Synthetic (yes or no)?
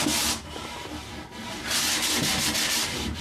no